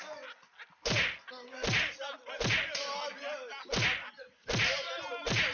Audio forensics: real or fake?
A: real